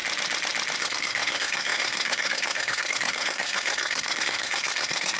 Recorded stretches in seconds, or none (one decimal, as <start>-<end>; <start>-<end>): 0.0-0.8